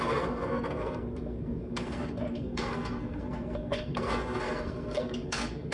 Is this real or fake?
fake